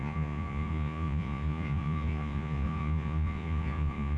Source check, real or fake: fake